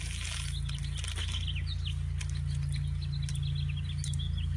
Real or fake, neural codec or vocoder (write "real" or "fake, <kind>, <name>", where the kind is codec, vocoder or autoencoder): real